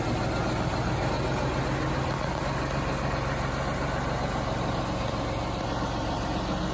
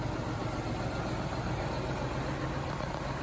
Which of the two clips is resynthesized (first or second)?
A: second